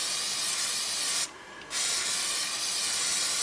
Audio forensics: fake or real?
real